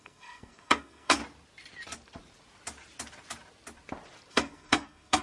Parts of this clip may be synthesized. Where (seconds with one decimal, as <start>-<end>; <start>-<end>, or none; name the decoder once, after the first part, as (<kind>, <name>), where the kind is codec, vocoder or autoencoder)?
0.0-1.2 (codec, SNAC); 4.3-5.2